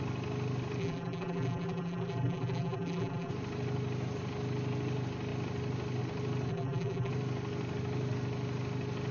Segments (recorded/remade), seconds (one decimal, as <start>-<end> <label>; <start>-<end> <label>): 0.0-0.8 recorded; 0.8-3.3 remade; 3.3-6.5 recorded; 6.5-7.1 remade; 7.1-9.1 recorded